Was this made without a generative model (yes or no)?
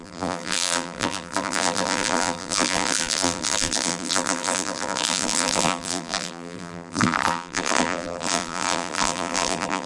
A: no